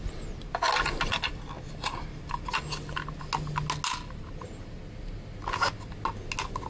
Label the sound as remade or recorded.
recorded